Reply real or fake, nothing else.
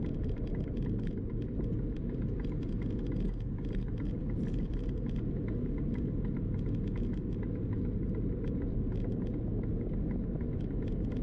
real